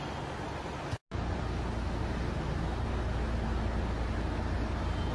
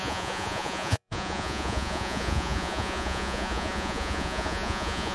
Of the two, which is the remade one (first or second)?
second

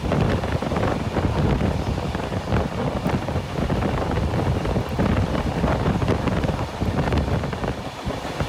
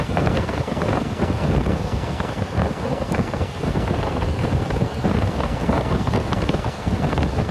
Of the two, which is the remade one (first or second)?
second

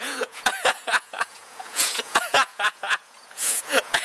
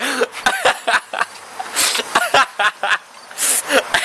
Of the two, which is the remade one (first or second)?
first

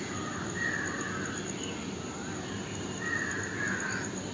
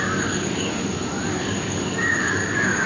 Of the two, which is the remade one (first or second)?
second